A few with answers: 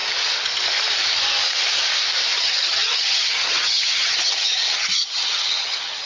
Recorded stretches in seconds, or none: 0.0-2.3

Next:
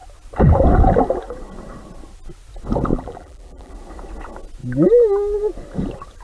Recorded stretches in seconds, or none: 0.0-2.9; 3.7-6.2

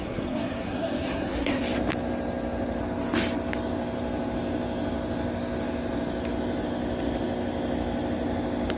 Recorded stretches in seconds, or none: 1.6-8.8